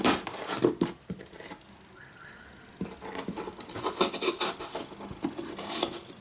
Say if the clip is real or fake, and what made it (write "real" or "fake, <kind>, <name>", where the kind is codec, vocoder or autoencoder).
real